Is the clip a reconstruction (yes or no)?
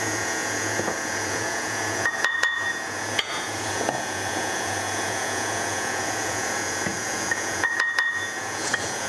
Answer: yes